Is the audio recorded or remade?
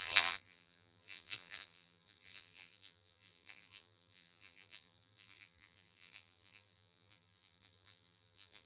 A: remade